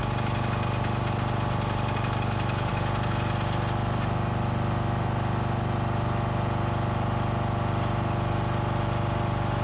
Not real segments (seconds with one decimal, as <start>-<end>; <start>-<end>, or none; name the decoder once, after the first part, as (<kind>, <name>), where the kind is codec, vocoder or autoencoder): none

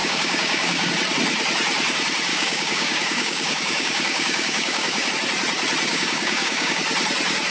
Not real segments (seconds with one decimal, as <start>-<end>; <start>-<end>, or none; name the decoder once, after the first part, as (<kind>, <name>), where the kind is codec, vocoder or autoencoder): 0.0-0.9 (codec, DAC); 2.3-5.1; 5.9-6.8